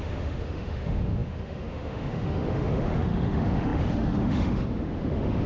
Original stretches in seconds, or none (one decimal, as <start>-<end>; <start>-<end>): none